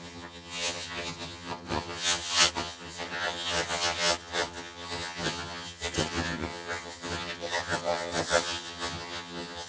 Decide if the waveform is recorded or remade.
remade